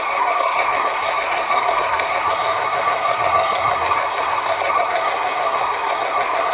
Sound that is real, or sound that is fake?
fake